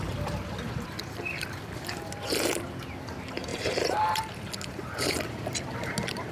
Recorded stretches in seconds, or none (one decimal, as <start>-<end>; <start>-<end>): 0.0-3.5; 4.2-6.3